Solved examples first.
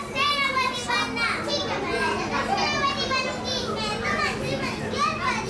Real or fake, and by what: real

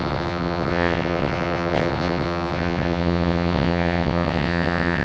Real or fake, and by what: fake, vocoder, WaveNeXt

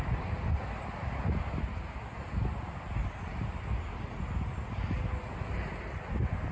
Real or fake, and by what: real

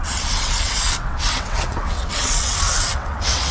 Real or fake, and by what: fake, vocoder, WaveNeXt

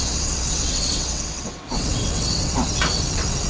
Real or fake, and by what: fake, vocoder, WaveNeXt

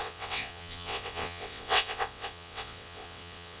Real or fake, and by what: fake, vocoder, WaveNeXt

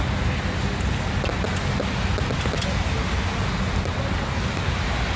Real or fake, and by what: real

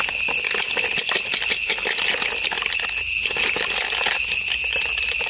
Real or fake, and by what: real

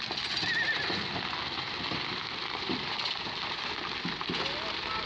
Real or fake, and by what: real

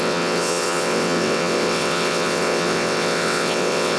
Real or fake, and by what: fake, vocoder, WaveNeXt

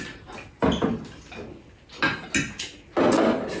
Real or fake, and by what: real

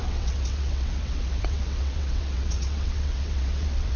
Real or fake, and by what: fake, vocoder, WaveNeXt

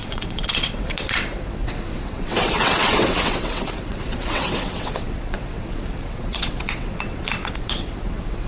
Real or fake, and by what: fake, vocoder, WaveNeXt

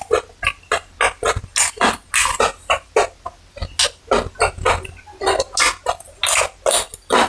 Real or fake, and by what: real